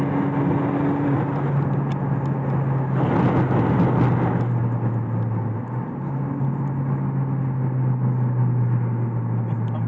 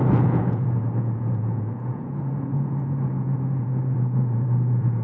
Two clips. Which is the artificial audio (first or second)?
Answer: second